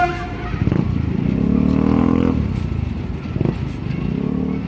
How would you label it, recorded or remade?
recorded